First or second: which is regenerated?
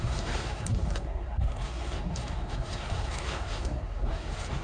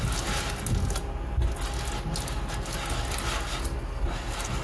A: first